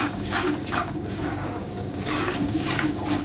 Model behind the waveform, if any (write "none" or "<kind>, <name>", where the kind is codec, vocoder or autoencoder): codec, DAC